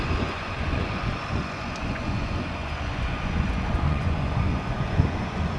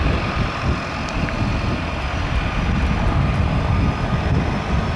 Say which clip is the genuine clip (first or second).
second